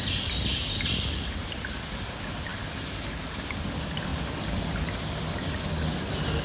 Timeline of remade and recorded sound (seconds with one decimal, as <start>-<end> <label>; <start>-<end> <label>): 0.0-6.4 recorded